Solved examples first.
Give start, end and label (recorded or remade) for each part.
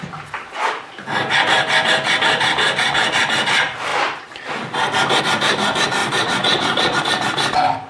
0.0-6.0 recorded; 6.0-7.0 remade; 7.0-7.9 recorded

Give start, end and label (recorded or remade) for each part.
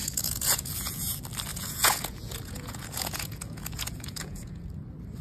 0.0-1.0 remade; 1.0-1.5 recorded; 1.5-4.6 remade; 4.6-5.2 recorded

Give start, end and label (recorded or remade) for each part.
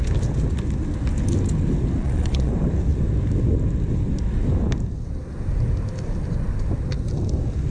0.0-2.0 recorded; 2.0-2.5 remade; 2.5-7.7 recorded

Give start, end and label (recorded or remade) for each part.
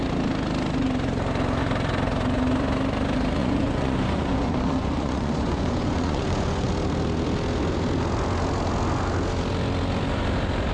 0.0-3.4 recorded; 3.4-6.7 remade; 6.7-10.7 recorded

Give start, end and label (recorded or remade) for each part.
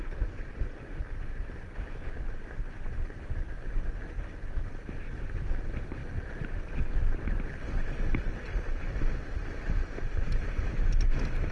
0.0-11.5 recorded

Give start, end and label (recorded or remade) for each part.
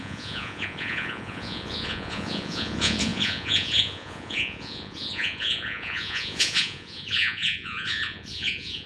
0.0-8.9 remade